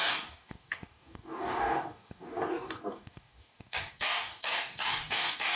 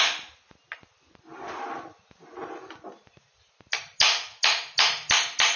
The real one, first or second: second